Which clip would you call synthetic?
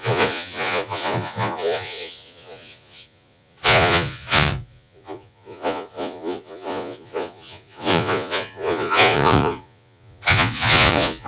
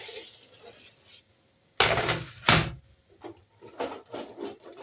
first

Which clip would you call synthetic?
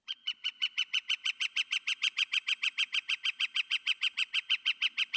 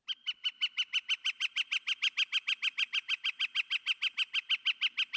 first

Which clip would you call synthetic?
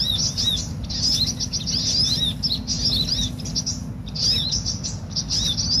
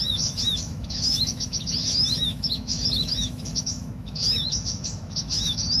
second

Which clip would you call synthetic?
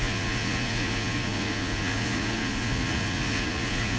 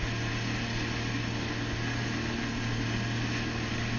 first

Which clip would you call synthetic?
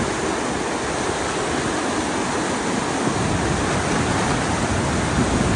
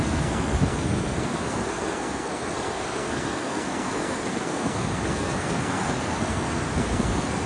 second